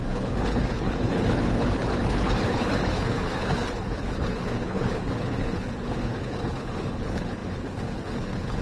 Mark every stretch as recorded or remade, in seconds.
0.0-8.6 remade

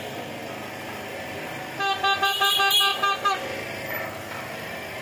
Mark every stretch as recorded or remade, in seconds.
0.0-5.0 recorded

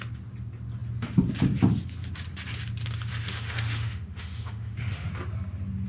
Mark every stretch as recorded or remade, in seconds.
0.0-3.1 recorded; 3.1-5.1 remade; 5.1-5.9 recorded

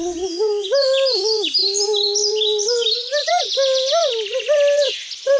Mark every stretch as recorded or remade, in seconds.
0.0-5.4 recorded

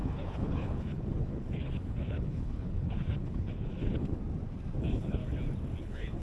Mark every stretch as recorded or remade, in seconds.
0.0-4.2 remade; 4.2-4.8 recorded; 4.8-5.2 remade; 5.2-5.8 recorded; 5.8-6.2 remade

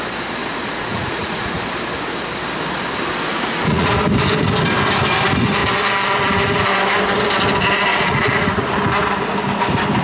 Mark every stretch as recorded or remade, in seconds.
0.0-0.4 recorded; 0.4-1.5 remade; 1.5-3.3 recorded; 3.3-3.9 remade; 3.9-7.9 recorded; 7.9-8.6 remade; 8.6-10.0 recorded